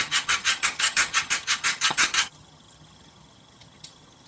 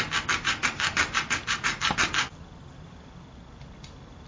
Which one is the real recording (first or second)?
second